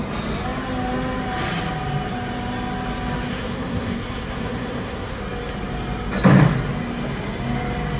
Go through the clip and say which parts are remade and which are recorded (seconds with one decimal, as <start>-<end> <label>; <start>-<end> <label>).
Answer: 0.0-3.3 recorded; 3.3-5.2 remade; 5.2-8.0 recorded